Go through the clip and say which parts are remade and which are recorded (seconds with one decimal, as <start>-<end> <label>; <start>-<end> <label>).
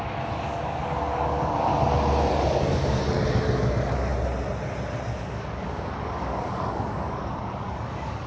0.0-1.7 remade; 1.7-2.3 recorded; 2.3-4.1 remade; 4.1-5.2 recorded; 5.2-8.3 remade